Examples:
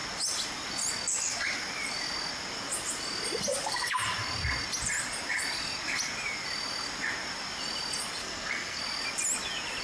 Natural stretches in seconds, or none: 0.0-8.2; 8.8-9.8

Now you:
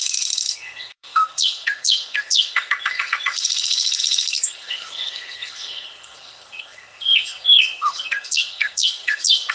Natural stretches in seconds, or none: none

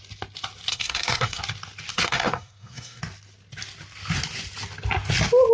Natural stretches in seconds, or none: 0.0-0.7; 1.4-1.9; 3.0-5.5

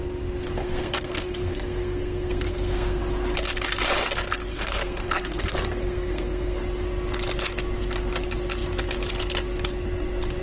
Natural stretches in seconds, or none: 0.0-0.6; 3.0-4.5; 6.6-10.4